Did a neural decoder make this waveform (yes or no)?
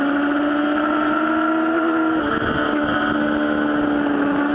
no